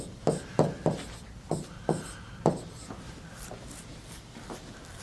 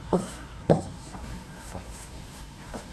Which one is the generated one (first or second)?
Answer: second